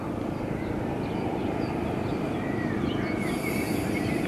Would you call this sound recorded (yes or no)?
yes